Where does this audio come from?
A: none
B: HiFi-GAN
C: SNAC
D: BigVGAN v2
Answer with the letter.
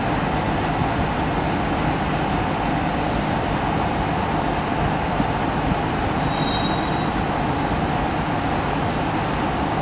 A